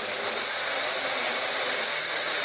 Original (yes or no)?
yes